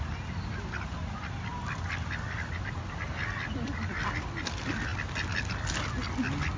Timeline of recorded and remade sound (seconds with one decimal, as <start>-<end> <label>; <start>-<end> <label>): 0.0-6.6 recorded